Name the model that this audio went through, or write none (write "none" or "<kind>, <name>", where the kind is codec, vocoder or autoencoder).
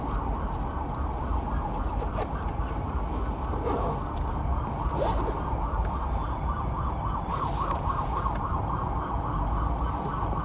none